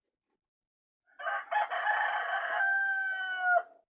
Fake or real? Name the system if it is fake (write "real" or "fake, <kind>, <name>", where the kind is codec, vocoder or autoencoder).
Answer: real